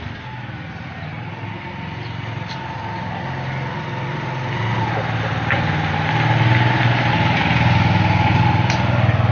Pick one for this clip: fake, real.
real